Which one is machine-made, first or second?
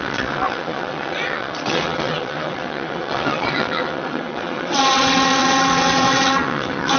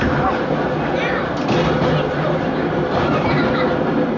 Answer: first